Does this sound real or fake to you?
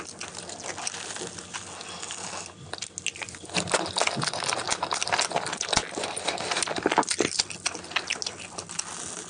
real